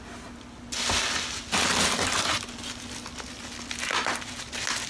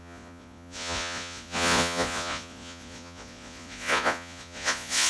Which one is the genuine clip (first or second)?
first